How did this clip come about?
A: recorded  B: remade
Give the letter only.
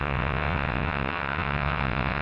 B